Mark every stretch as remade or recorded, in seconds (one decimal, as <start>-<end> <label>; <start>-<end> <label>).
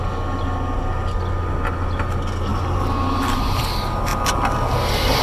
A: 0.0-2.5 recorded; 2.5-3.6 remade; 3.6-5.2 recorded